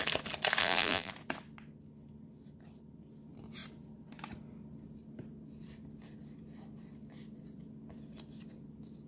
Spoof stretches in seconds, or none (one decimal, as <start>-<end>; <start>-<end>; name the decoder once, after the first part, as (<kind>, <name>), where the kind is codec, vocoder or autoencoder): 0.6-1.1 (vocoder, BigVGAN v2)